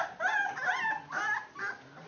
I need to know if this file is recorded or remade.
recorded